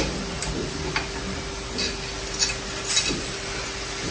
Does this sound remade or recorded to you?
recorded